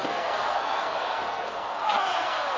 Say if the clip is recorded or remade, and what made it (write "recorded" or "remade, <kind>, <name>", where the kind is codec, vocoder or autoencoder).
remade, codec, SNAC